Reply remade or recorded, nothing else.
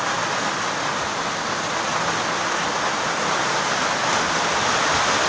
recorded